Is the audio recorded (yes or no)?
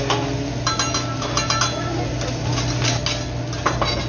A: yes